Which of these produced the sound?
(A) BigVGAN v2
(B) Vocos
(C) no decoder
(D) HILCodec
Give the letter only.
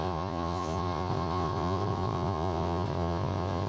B